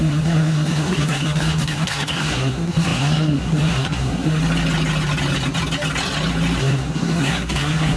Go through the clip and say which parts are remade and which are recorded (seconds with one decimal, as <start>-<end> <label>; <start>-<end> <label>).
0.0-4.4 remade; 4.4-6.6 recorded; 6.6-8.0 remade